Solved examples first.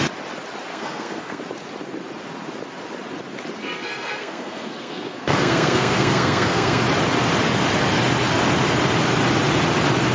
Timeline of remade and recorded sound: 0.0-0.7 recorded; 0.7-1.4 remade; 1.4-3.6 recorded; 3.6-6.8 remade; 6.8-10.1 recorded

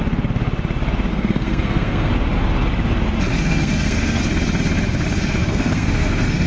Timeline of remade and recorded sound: 0.0-1.1 recorded; 1.1-2.1 remade; 2.1-3.3 recorded; 3.3-4.2 remade; 4.2-5.4 recorded; 5.4-6.5 remade

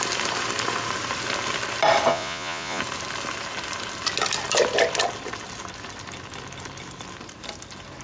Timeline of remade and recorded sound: 0.0-2.1 recorded; 2.1-2.8 remade; 2.8-8.0 recorded

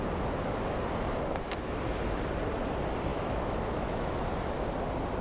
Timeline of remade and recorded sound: 0.0-3.1 recorded; 3.1-4.1 remade; 4.1-5.2 recorded